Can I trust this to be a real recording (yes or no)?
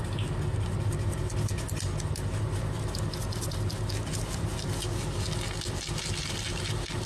yes